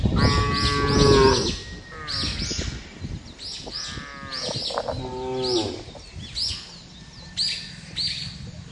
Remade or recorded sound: recorded